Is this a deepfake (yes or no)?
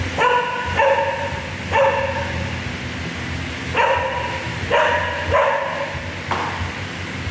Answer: no